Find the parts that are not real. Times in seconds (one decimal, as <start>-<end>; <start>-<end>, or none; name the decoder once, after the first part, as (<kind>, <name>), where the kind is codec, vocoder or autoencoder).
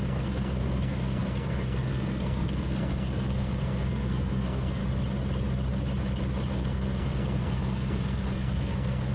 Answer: 0.0-4.8 (codec, SNAC); 6.5-9.1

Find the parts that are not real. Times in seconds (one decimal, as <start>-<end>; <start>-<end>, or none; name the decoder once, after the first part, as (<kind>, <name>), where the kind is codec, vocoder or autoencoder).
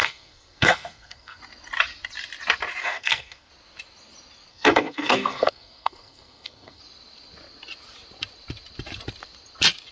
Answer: 0.0-1.4 (codec, SNAC); 2.8-3.5; 4.5-6.8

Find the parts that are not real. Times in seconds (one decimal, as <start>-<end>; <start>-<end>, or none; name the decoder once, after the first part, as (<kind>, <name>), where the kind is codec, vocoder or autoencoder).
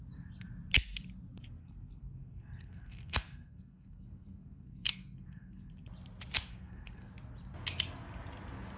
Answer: 1.6-5.7 (codec, SNAC); 6.5-7.1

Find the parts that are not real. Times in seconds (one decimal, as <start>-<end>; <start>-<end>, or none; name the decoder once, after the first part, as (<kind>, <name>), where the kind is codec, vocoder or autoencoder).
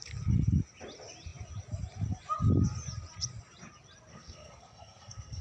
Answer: 4.1-5.4 (codec, SNAC)